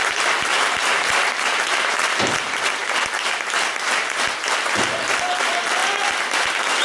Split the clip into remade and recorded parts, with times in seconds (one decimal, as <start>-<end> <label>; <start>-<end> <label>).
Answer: 0.0-0.5 recorded; 0.5-1.6 remade; 1.6-6.8 recorded